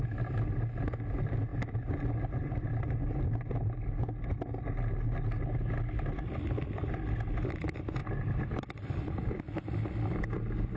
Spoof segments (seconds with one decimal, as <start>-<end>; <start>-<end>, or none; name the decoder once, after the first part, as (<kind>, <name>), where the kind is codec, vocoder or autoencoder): 8.0-9.4 (vocoder, BigVGAN v2)

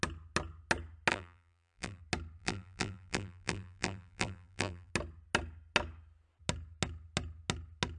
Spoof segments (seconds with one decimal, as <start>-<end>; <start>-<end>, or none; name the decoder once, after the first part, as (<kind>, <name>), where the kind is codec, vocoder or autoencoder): 1.1-2.0 (vocoder, BigVGAN v2); 2.4-4.9

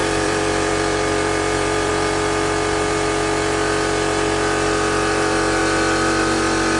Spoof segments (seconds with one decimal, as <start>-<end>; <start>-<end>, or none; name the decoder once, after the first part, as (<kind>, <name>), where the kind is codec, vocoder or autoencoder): 0.0-1.9 (vocoder, BigVGAN v2)

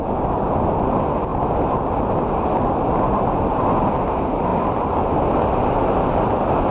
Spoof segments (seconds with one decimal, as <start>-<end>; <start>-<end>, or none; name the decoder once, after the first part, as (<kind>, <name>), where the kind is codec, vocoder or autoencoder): none

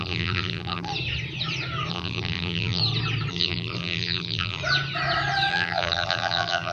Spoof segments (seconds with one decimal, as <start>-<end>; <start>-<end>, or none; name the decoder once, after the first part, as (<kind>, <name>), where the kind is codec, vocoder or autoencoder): 0.0-0.9 (vocoder, BigVGAN v2); 1.9-2.8; 3.3-4.6; 5.5-6.7

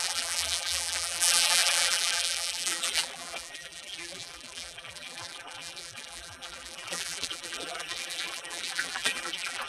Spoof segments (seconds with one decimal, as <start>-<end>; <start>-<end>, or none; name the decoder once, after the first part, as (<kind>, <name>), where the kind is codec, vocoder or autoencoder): 0.0-9.7 (vocoder, BigVGAN v2)

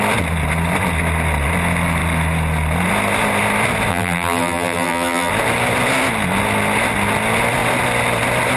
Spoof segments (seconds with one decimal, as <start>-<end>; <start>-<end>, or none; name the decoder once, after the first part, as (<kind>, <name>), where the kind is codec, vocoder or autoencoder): 3.9-5.3 (vocoder, BigVGAN v2)

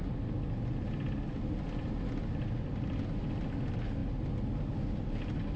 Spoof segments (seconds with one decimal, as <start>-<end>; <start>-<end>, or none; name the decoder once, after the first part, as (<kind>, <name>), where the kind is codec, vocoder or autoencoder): none